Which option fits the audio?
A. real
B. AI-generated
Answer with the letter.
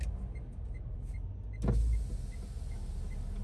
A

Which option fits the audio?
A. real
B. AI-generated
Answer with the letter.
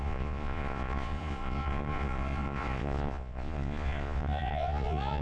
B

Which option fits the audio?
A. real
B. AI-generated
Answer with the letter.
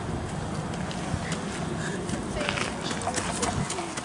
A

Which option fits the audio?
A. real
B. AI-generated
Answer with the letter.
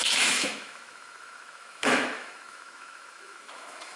B